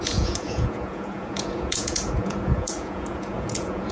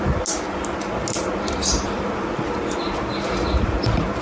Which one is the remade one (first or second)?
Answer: first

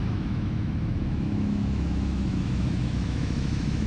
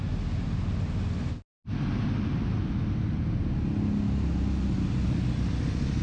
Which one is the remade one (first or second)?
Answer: first